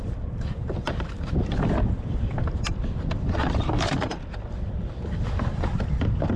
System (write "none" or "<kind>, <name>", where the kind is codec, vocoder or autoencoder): vocoder, BigVGAN v2